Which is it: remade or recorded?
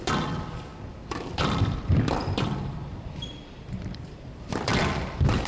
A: remade